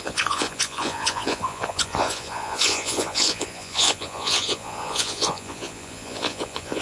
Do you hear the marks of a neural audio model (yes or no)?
yes